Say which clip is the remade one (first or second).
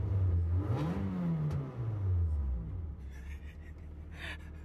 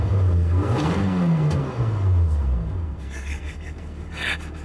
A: second